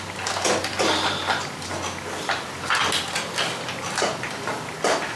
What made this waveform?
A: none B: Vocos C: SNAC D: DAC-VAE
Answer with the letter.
A